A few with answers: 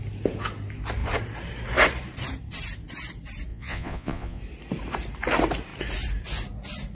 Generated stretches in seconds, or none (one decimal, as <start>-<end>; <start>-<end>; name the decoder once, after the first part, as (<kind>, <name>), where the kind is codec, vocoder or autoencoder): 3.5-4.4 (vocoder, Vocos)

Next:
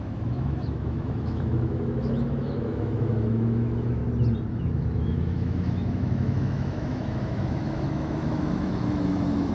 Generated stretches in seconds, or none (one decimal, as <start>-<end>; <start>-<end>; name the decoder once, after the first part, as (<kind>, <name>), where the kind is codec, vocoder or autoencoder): 0.0-4.0 (autoencoder, DAC-VAE); 4.5-9.5

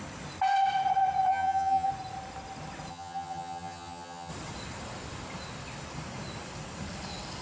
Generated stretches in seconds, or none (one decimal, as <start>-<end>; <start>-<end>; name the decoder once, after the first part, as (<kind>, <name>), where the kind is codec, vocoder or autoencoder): 1.3-1.9 (vocoder, HiFi-GAN); 2.9-4.3